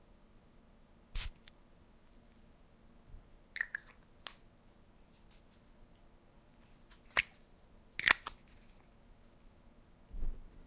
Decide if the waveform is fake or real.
real